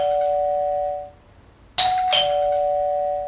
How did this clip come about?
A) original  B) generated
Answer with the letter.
A